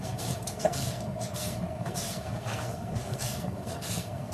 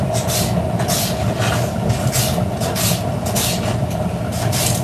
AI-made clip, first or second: first